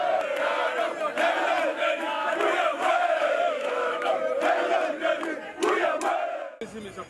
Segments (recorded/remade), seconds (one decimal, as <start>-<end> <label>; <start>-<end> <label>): 0.0-1.7 recorded; 1.7-2.3 remade; 2.3-2.7 recorded; 2.7-4.2 remade; 4.2-7.1 recorded